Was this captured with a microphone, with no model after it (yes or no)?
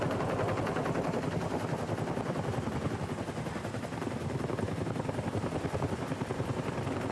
yes